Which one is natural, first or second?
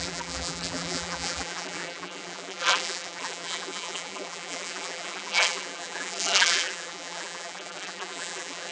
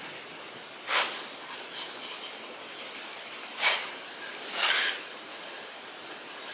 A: second